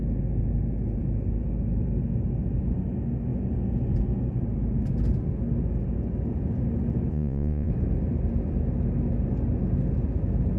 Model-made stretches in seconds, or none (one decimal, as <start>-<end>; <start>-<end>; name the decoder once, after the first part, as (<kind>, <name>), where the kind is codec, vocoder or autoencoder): 7.1-7.7 (vocoder, Vocos)